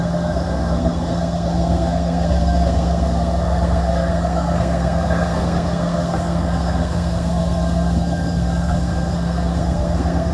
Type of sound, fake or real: fake